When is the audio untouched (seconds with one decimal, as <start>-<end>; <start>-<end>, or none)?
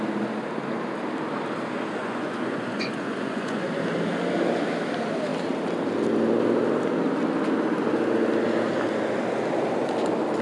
0.0-2.0; 3.7-10.4